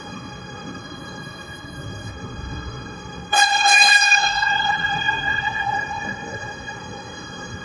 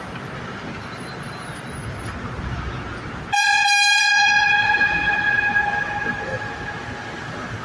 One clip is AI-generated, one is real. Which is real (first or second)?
second